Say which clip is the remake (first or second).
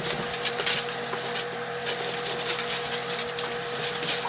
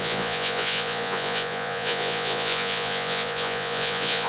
second